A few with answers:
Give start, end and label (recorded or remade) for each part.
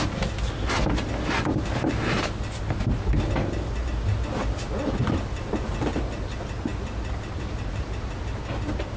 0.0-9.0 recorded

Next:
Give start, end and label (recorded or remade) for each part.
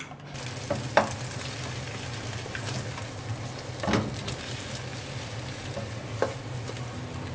0.0-7.3 recorded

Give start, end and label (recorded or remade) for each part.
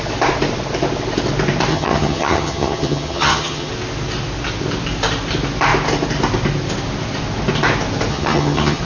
0.0-1.7 recorded; 1.7-3.7 remade; 3.7-8.1 recorded; 8.1-8.8 remade